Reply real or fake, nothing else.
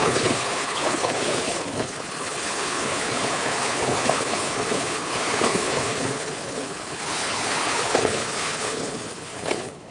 fake